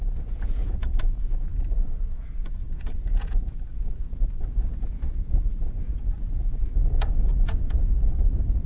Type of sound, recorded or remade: remade